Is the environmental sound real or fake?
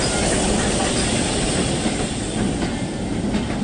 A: real